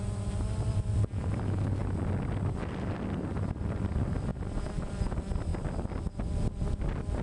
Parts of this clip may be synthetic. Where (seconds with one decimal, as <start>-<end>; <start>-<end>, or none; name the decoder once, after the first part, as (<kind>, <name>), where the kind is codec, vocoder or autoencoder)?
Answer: none